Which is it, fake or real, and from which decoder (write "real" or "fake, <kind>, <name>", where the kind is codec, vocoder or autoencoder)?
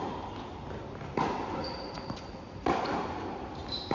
real